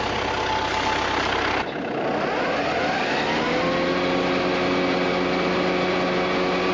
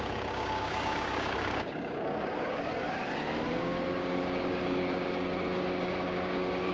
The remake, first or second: second